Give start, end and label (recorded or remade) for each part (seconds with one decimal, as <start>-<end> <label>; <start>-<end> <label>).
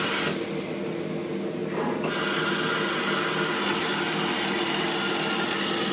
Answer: 0.0-5.9 recorded